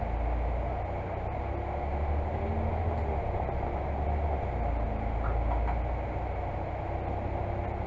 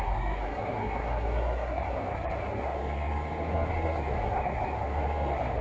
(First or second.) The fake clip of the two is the second